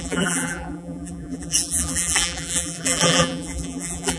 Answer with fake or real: fake